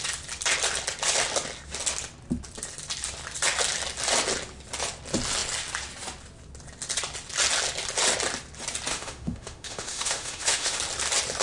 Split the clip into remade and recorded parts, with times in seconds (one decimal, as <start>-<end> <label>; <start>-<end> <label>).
0.0-8.9 recorded; 8.9-10.8 remade; 10.8-11.4 recorded